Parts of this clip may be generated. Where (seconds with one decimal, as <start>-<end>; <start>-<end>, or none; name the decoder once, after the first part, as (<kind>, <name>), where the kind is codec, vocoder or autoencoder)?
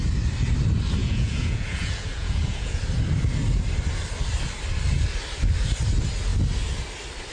1.0-2.8 (vocoder, Vocos)